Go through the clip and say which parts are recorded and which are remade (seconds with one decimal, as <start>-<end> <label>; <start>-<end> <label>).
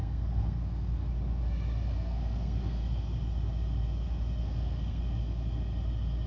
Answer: 0.0-1.1 remade; 1.1-1.9 recorded; 1.9-2.8 remade; 2.8-4.4 recorded; 4.4-5.0 remade; 5.0-6.3 recorded